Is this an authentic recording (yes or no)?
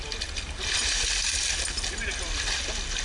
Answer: yes